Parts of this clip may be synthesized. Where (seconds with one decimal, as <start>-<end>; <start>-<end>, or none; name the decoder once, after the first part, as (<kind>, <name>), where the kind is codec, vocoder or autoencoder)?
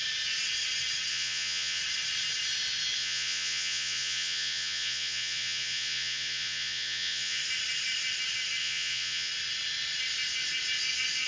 1.1-1.8 (vocoder, Vocos); 3.0-7.4; 8.6-9.3